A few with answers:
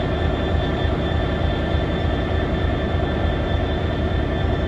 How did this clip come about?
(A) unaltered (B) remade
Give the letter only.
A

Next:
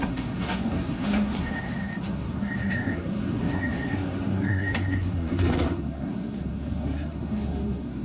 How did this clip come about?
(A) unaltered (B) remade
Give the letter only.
B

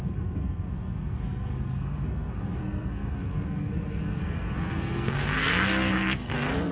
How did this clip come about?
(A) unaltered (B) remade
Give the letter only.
B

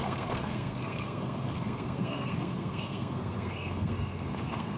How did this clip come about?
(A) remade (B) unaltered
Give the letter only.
A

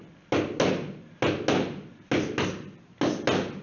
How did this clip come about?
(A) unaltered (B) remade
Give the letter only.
A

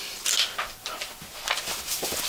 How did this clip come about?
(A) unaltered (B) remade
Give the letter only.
A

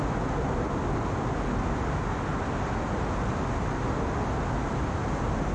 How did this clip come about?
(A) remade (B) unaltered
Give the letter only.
B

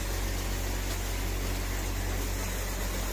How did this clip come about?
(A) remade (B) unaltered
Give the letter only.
B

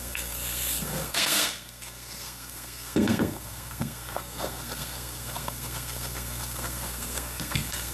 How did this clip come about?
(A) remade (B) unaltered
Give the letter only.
A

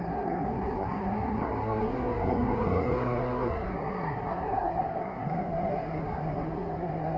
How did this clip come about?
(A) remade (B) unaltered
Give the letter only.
A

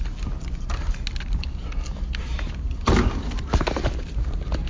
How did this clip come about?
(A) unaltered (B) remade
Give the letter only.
A